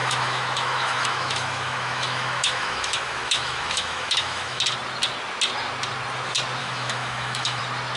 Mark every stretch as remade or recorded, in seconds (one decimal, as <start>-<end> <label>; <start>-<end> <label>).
0.0-4.6 remade; 4.6-6.6 recorded; 6.6-7.6 remade; 7.6-8.0 recorded